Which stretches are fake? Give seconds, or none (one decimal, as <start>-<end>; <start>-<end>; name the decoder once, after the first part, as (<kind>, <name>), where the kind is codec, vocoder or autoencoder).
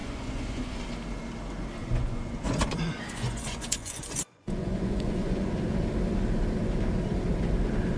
0.0-0.8 (vocoder, Vocos); 1.8-5.5